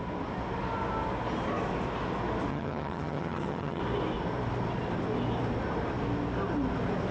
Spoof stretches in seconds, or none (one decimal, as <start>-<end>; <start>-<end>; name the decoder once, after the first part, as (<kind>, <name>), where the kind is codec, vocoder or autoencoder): 2.5-3.8 (vocoder, HiFi-GAN)